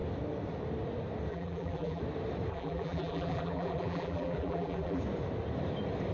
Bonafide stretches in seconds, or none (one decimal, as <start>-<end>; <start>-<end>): 0.0-1.3; 2.0-2.5; 5.0-6.1